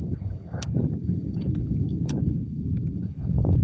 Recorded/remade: remade